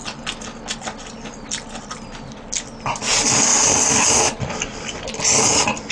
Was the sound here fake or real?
real